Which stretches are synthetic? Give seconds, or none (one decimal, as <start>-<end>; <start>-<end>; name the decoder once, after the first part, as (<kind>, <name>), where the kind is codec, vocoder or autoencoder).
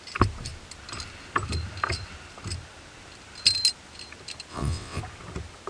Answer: 4.5-5.0 (vocoder, WaveNeXt)